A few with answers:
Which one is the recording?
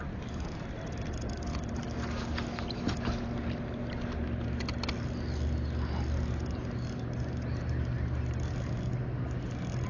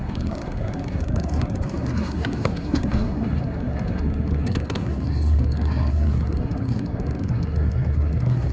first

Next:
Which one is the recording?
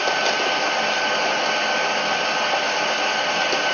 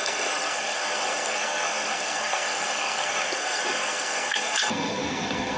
first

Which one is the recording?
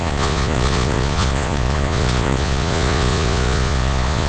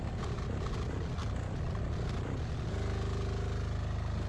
second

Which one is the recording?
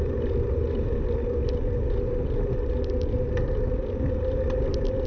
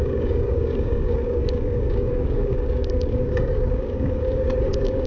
first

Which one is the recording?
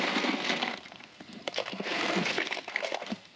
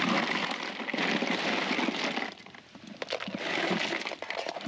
second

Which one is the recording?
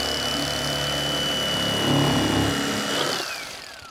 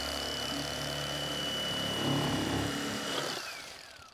first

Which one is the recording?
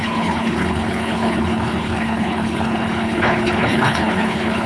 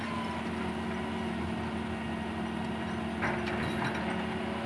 second